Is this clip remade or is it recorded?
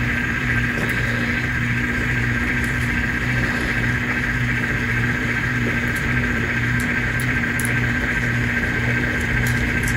remade